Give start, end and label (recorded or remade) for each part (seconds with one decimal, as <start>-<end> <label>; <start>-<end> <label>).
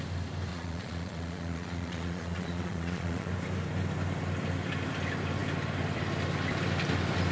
0.0-0.5 recorded; 0.5-3.3 remade; 3.3-7.3 recorded